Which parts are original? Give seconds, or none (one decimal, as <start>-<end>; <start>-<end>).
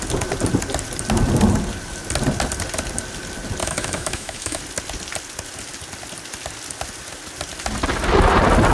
0.0-3.6; 4.6-8.7